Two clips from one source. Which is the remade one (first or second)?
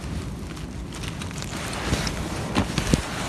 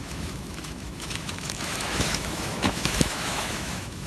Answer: second